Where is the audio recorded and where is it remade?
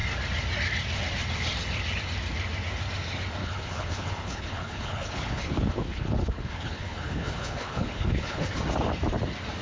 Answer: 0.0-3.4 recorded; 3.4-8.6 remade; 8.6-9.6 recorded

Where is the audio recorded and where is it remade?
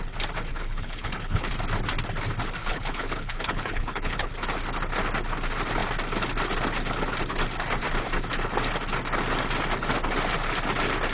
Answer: 0.0-0.5 recorded; 0.5-1.5 remade; 1.5-2.6 recorded; 2.6-4.3 remade; 4.3-11.1 recorded